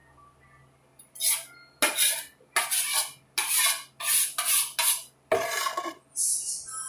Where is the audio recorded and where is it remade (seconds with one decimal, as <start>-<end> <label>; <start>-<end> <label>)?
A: 0.0-6.9 recorded